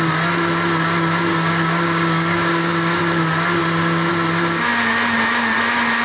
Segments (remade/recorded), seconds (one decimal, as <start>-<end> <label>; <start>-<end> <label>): 0.0-1.3 recorded; 1.3-3.0 remade; 3.0-6.0 recorded